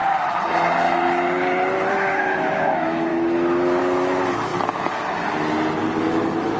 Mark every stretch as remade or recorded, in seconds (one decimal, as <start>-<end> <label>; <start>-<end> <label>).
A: 0.0-1.9 recorded; 1.9-3.1 remade; 3.1-3.8 recorded; 3.8-4.5 remade; 4.5-6.0 recorded; 6.0-6.6 remade